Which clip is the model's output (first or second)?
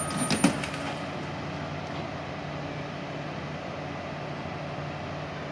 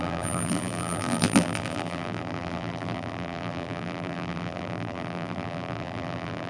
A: second